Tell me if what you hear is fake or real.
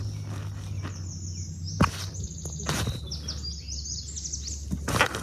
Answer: real